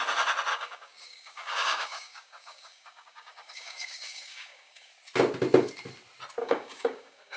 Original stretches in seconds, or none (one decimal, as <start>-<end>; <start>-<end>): 0.0-0.5; 4.9-6.4